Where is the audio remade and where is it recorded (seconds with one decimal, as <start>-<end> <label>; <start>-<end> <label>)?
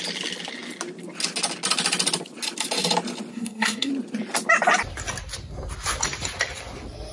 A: 0.0-3.3 recorded; 3.3-3.9 remade; 3.9-7.1 recorded